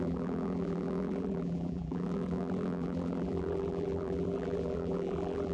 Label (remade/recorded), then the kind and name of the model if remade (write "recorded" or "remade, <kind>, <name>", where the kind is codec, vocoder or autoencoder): remade, vocoder, BigVGAN v2